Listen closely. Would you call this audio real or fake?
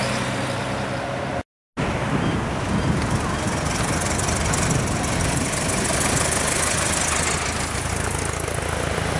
real